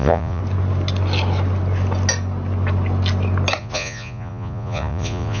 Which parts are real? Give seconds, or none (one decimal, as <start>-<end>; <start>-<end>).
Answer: 0.4-3.6